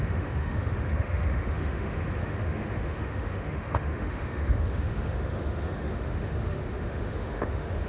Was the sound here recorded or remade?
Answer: remade